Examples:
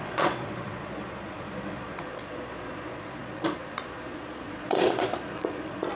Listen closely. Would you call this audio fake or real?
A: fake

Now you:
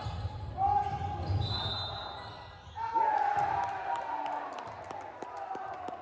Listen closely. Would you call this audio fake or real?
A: real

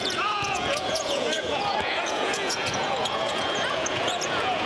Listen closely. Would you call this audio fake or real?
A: fake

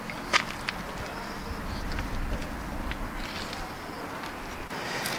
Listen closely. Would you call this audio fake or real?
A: real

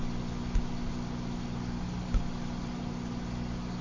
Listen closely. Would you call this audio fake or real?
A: real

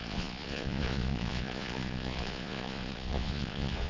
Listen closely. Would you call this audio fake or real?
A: fake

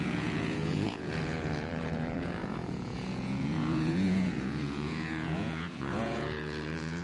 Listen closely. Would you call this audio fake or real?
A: fake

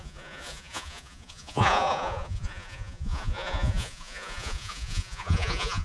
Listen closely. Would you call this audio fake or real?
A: fake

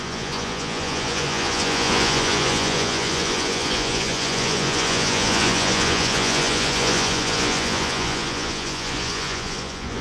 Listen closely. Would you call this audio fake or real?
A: fake